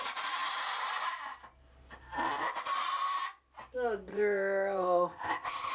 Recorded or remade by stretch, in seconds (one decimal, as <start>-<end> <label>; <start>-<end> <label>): 0.0-4.1 recorded; 4.1-5.7 remade